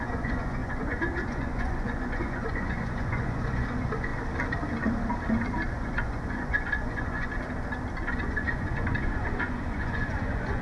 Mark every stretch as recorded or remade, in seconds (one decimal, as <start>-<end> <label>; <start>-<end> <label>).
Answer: 0.0-4.1 remade; 4.1-5.7 recorded; 5.7-7.3 remade; 7.3-7.9 recorded; 7.9-10.6 remade